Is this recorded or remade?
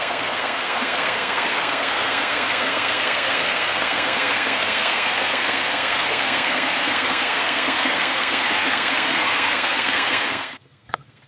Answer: remade